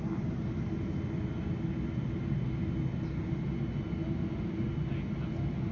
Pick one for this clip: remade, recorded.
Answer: recorded